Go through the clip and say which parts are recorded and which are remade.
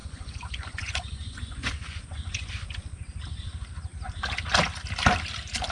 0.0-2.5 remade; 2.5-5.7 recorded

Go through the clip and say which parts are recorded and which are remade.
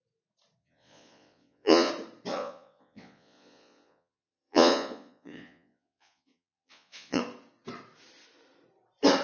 0.0-0.6 recorded; 0.6-1.9 remade; 1.9-2.3 recorded; 2.3-7.2 remade; 7.2-9.2 recorded